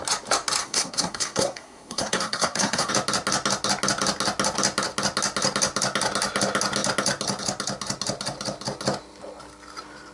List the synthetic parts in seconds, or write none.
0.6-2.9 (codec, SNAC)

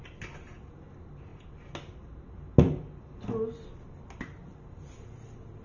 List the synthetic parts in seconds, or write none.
none

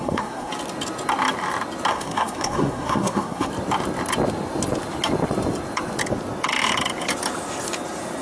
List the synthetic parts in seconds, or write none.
0.0-0.5 (codec, SNAC); 1.9-3.5

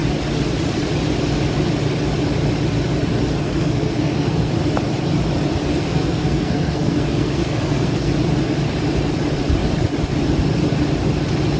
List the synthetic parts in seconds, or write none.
3.4-4.5 (codec, SNAC); 5.7-8.1

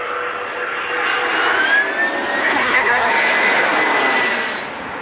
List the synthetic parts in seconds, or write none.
2.4-3.1 (codec, SNAC)

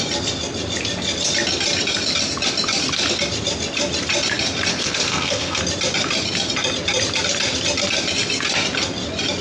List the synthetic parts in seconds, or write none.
4.7-5.6 (codec, SNAC)